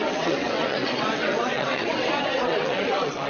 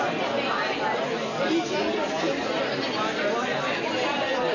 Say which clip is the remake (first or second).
first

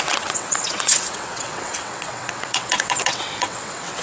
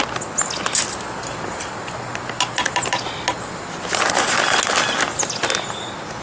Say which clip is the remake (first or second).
first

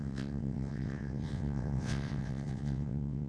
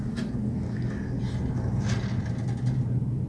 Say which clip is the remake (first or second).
first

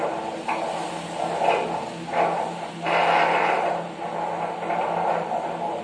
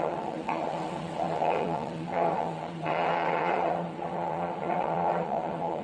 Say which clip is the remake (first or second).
second